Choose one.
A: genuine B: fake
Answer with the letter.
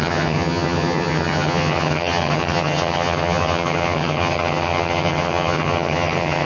B